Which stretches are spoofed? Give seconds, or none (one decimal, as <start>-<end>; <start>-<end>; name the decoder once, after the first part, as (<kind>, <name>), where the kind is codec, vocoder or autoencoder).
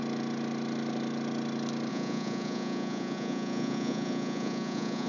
1.9-5.1 (vocoder, Vocos)